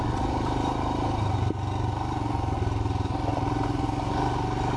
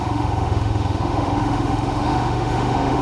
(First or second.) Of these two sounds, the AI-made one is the second